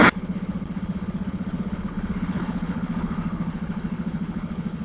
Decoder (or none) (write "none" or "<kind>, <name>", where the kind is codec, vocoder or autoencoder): codec, HILCodec